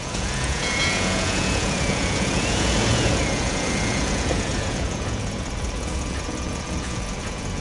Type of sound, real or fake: fake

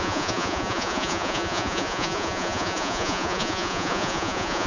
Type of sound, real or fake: fake